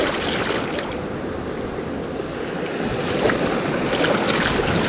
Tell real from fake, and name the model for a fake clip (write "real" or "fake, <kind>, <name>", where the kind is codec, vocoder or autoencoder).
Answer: real